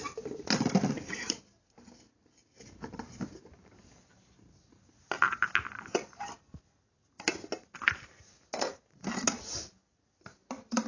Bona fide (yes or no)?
yes